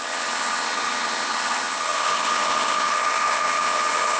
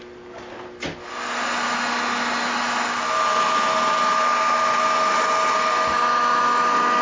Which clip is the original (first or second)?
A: second